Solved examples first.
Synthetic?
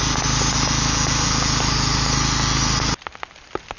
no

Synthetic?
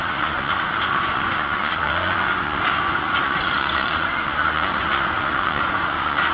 yes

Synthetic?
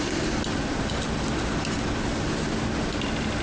no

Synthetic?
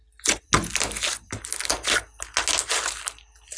no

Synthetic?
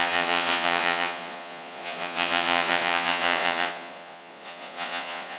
yes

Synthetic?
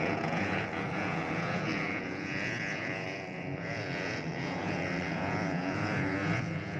yes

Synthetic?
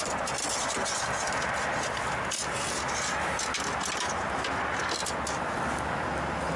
no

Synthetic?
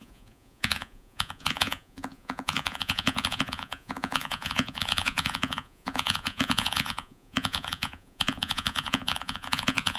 yes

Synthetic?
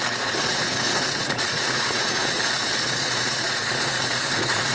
yes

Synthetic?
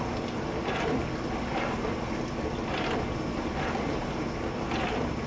no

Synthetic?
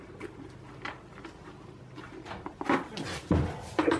no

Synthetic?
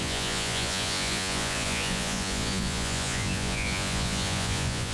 yes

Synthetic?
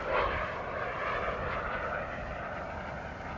no